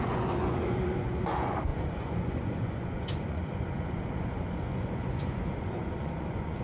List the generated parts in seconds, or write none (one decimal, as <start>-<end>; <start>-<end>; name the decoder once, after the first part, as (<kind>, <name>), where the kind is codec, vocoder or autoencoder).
0.0-6.6 (vocoder, Vocos)